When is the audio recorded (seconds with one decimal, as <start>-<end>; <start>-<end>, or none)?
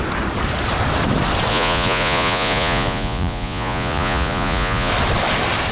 0.0-1.5; 4.9-5.7